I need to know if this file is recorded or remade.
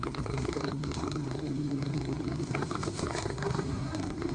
remade